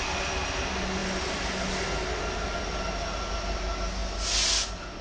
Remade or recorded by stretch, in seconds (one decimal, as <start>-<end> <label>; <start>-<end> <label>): 0.0-5.0 recorded